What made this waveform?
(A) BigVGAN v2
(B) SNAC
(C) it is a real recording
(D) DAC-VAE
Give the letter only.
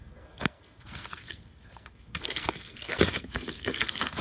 B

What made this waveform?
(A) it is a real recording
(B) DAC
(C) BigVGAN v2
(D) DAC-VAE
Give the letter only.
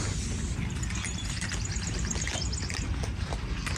A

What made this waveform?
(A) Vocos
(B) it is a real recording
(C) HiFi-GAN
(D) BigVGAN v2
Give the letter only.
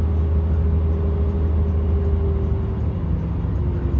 B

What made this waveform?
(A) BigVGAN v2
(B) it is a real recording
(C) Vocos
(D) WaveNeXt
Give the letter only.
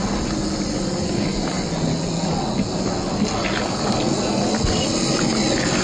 B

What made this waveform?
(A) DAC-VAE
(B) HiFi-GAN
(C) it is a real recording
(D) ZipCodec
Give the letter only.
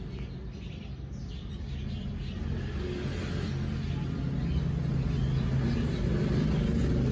C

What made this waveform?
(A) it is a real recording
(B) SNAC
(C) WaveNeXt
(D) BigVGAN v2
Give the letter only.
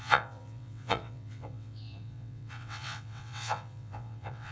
C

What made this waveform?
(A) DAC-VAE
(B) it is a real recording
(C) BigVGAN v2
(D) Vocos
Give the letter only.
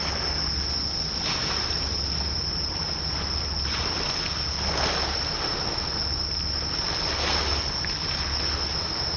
B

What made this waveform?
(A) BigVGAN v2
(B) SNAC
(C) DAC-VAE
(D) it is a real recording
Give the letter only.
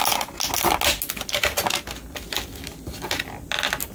D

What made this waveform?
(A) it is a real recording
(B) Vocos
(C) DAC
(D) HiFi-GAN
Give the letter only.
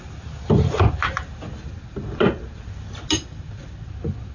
A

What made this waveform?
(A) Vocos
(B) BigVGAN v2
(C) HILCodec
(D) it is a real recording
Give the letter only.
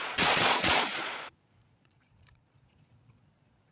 A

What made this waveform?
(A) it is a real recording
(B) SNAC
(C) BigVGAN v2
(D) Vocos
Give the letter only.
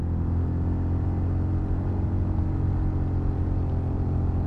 A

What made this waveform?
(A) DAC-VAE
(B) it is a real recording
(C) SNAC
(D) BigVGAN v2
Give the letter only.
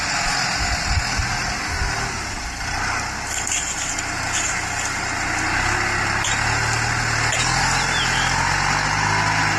B